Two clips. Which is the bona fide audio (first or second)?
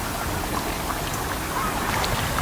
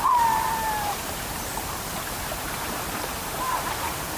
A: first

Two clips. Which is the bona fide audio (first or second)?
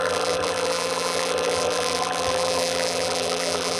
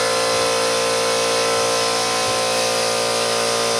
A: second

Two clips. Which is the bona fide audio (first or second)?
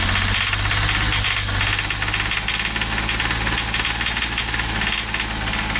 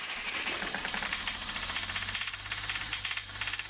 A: first